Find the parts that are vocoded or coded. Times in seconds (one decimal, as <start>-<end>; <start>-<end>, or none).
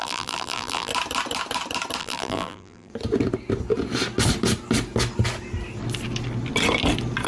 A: 0.0-0.9; 2.0-2.9